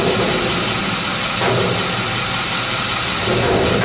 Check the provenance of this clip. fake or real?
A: real